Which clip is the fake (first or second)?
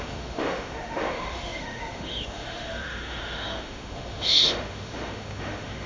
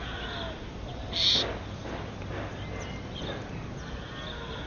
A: first